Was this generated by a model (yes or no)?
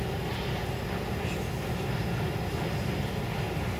no